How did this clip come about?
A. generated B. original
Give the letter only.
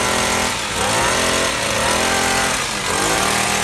B